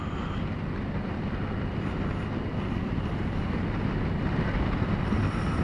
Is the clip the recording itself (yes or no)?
yes